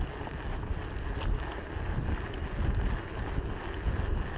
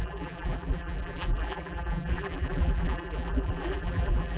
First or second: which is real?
first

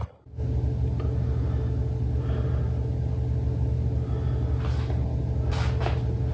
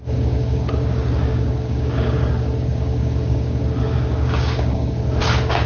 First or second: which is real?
first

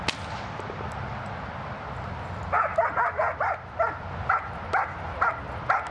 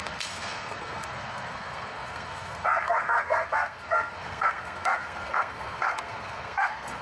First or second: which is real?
first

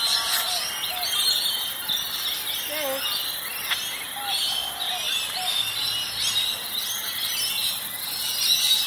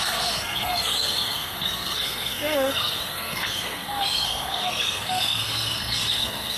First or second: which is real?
first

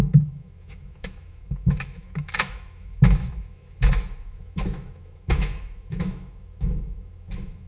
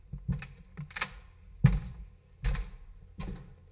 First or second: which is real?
second